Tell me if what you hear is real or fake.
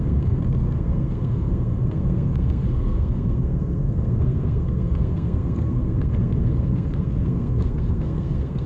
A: fake